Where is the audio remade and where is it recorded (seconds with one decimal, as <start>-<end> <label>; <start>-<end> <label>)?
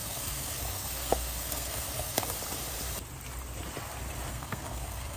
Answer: 0.0-2.2 remade; 2.2-4.3 recorded; 4.3-5.2 remade